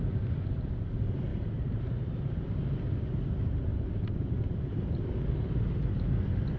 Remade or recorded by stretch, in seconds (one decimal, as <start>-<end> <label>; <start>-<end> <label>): 0.0-1.3 recorded; 1.3-1.8 remade; 1.8-3.7 recorded; 3.7-4.8 remade; 4.8-6.6 recorded